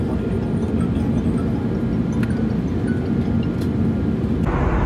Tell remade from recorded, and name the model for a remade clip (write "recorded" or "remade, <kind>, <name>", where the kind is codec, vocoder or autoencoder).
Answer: recorded